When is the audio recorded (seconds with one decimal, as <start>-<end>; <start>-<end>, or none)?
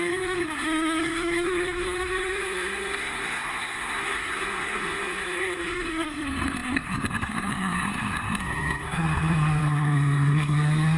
none